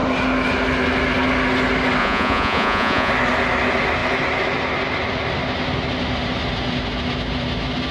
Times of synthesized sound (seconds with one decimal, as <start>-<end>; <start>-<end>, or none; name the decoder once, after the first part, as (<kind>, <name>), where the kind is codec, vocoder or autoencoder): 2.0-3.1 (vocoder, Vocos)